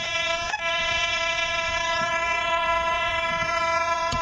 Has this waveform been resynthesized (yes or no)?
yes